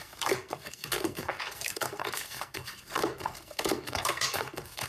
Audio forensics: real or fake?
fake